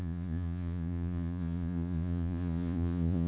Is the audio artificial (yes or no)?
yes